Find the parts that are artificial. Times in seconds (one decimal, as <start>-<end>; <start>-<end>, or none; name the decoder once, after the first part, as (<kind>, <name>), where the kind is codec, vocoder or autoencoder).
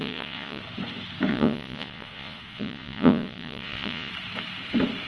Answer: 0.0-0.6 (vocoder, Vocos); 1.3-4.1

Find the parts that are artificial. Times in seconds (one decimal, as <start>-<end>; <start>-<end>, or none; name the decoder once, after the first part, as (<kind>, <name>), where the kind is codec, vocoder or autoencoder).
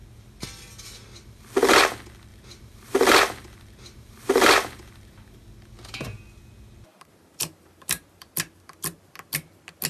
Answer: 2.3-5.4 (vocoder, BigVGAN v2); 6.9-8.3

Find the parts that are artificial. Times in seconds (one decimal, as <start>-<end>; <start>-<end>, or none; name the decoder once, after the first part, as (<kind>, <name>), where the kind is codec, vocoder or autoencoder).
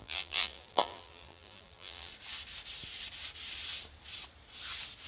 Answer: 0.0-2.1 (vocoder, BigVGAN v2)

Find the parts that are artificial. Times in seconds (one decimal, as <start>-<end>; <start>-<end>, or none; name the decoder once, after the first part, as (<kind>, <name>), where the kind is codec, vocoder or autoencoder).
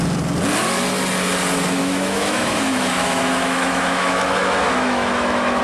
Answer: 1.8-5.6 (autoencoder, DAC-VAE)